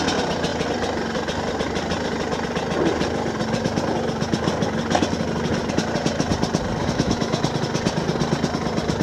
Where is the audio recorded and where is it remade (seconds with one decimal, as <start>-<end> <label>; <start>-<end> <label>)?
0.0-6.8 recorded; 6.8-7.4 remade; 7.4-9.0 recorded